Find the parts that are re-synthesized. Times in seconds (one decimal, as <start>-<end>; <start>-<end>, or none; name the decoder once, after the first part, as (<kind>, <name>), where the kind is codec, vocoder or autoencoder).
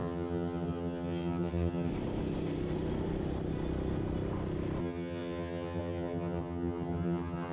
0.0-1.9 (vocoder, HiFi-GAN); 4.8-7.5